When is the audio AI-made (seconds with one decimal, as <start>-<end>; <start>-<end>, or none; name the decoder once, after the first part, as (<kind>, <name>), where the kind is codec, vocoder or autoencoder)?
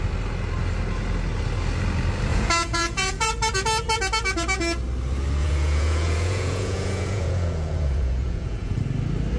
2.3-3.3 (vocoder, Vocos); 5.4-8.8